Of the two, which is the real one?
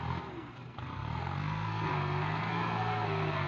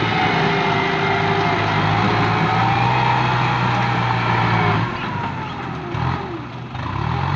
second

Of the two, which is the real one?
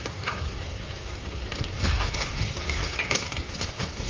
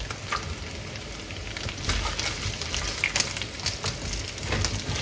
second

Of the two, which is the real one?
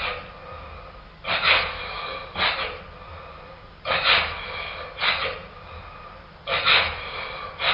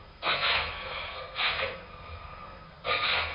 first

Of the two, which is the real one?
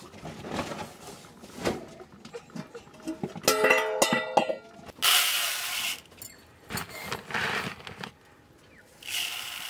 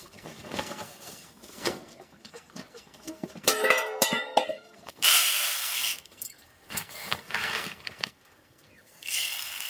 first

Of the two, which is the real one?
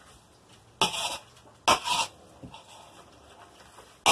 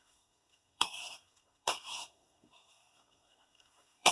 first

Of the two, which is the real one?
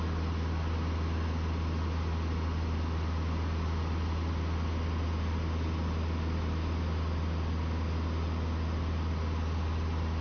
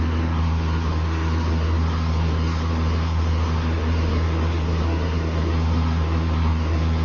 first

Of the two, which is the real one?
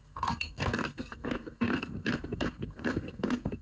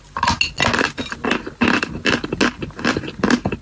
second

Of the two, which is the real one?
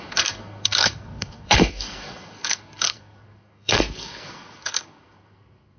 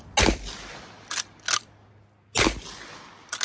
second